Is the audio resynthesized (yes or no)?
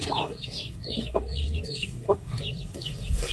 yes